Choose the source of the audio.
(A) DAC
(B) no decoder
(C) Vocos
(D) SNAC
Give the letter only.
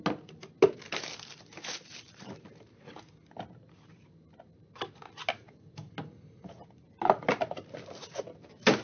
B